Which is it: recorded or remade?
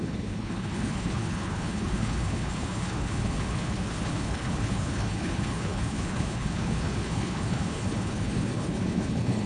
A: remade